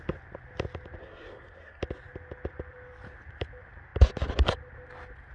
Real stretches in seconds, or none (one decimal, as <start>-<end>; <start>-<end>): 0.0-1.0; 1.8-5.3